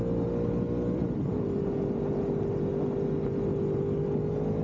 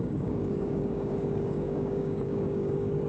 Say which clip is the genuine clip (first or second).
first